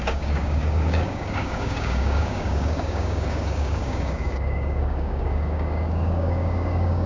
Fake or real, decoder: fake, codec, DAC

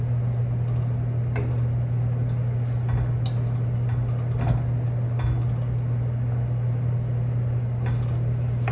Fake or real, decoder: real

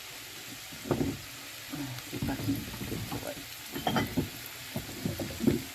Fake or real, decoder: real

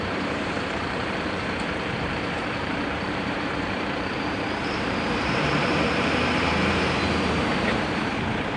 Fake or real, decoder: fake, vocoder, BigVGAN v2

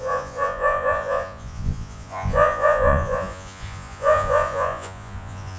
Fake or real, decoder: fake, vocoder, Vocos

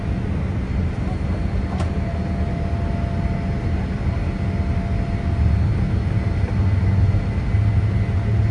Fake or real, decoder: real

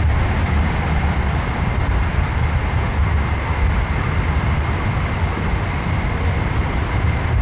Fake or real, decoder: real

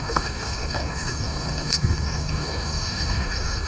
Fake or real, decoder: fake, codec, DAC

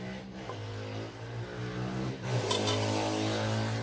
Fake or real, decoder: real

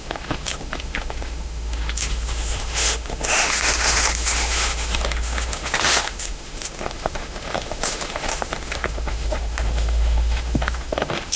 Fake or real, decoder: fake, autoencoder, DAC-VAE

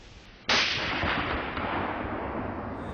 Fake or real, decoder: real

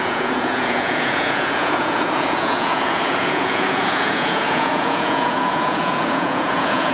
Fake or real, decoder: fake, vocoder, Vocos